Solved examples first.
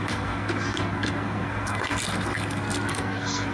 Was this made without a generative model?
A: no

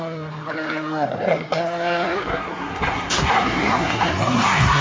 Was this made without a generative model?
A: no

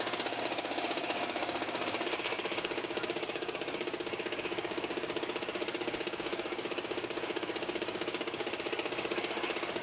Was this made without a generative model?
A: no